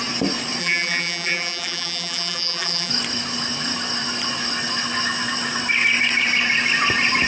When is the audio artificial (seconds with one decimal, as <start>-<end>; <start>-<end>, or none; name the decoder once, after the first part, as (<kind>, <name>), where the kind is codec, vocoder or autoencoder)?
0.6-2.9 (vocoder, BigVGAN v2)